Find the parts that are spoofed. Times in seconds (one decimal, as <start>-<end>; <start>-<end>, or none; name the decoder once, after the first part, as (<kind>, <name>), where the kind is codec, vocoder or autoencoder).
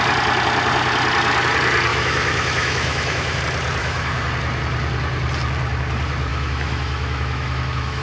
1.9-3.4 (autoencoder, DAC-VAE); 3.8-4.3; 6.3-8.0